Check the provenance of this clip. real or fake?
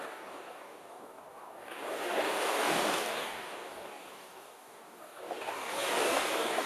fake